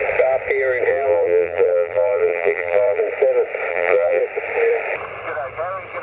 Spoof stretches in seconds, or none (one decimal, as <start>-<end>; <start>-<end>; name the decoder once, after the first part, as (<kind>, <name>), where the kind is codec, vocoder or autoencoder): 0.9-3.0 (vocoder, BigVGAN v2); 3.7-4.2